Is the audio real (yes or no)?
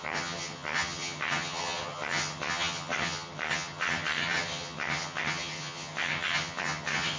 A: no